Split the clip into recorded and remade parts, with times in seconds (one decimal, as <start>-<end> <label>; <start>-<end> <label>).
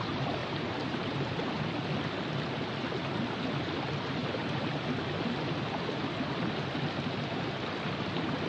0.0-0.4 recorded; 0.4-1.6 remade; 1.6-4.2 recorded; 4.2-4.8 remade; 4.8-8.5 recorded